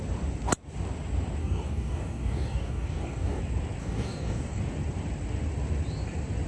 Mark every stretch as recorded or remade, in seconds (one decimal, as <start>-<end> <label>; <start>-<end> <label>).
0.0-1.4 recorded; 1.4-3.4 remade; 3.4-3.8 recorded; 3.8-4.6 remade; 4.6-6.5 recorded